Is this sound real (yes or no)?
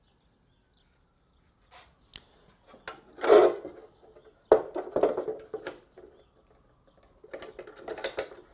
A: yes